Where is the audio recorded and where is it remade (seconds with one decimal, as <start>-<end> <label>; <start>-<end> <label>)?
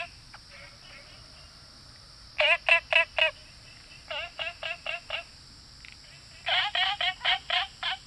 0.0-8.1 recorded